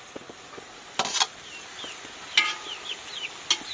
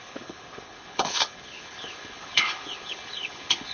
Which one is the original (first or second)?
first